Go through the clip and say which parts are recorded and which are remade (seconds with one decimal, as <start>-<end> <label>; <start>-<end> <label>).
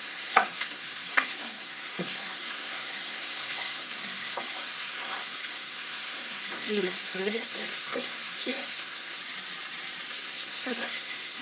0.0-9.2 remade; 9.2-10.1 recorded; 10.1-11.4 remade